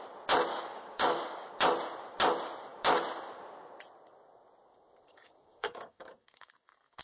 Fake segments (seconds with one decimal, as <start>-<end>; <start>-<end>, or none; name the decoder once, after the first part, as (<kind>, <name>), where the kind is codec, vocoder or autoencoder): 0.5-1.5 (codec, DAC); 5.1-7.0